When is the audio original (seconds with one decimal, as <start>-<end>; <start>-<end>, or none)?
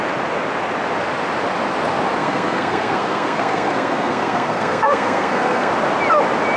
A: 0.0-2.2; 5.7-6.6